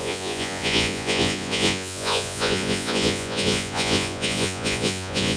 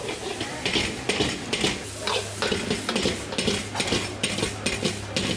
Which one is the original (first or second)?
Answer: second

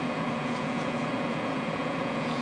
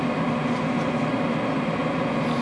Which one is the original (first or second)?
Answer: second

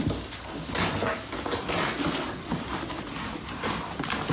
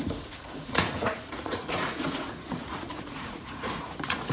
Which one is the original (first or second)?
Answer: first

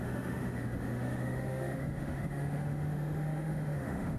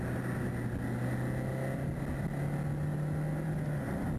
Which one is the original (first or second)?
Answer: second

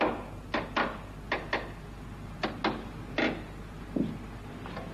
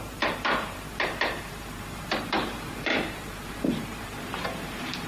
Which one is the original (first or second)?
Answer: first